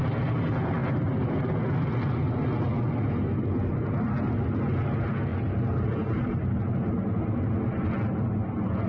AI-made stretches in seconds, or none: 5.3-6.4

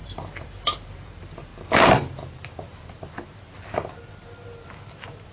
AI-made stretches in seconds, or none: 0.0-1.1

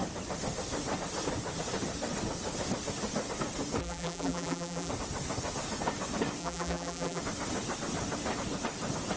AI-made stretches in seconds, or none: 3.8-4.9; 6.4-7.2